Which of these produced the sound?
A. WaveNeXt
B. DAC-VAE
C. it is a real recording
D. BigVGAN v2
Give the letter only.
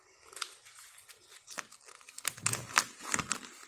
C